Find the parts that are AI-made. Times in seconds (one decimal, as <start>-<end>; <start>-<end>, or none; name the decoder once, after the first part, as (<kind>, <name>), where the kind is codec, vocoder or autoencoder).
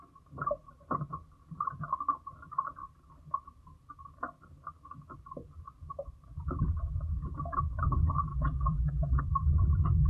8.3-9.2 (vocoder, BigVGAN v2)